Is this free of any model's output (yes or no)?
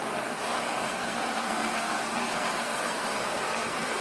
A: no